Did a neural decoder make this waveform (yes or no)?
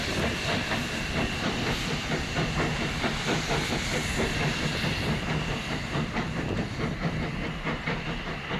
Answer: yes